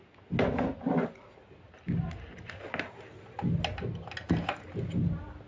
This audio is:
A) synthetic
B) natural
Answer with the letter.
B